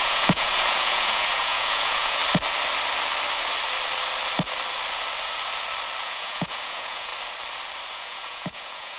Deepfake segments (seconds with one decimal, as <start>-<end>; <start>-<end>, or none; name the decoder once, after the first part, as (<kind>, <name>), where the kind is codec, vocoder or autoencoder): 0.0-2.2 (vocoder, Vocos); 6.0-7.1; 7.9-9.0